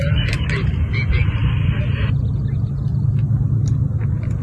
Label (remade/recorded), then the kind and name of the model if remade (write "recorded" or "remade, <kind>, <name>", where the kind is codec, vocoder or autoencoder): recorded